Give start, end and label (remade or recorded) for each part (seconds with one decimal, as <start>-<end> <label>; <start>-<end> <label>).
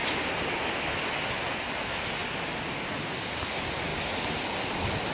0.0-5.1 recorded